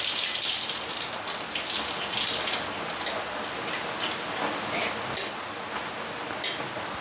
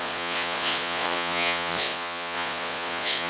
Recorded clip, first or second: first